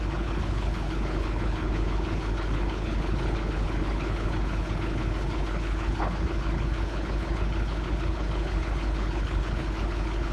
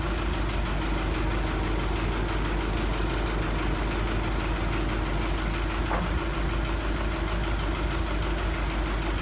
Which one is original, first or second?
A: second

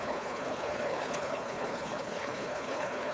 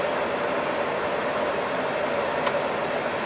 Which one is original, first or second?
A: second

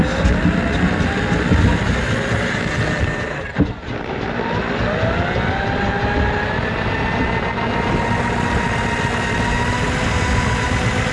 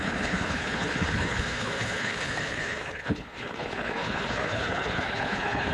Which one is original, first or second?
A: first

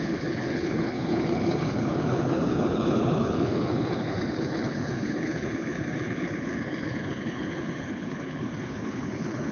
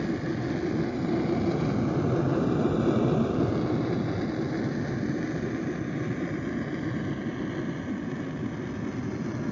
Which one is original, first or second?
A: second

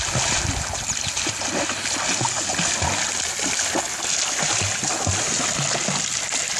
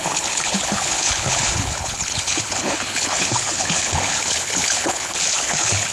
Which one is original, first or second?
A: first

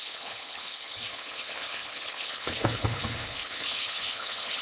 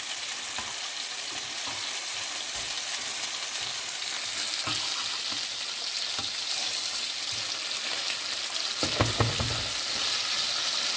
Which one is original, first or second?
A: second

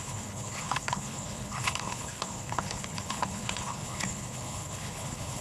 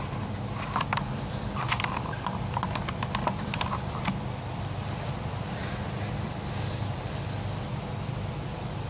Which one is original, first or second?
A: second